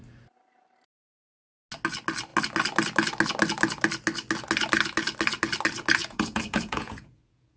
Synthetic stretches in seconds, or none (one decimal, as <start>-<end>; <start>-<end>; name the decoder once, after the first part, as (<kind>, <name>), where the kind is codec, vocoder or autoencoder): 6.0-7.6 (vocoder, Vocos)